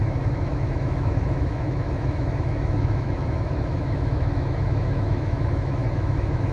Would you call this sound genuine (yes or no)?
no